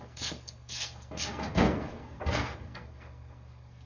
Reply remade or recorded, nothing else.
remade